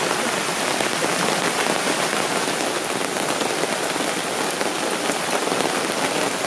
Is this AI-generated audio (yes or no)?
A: no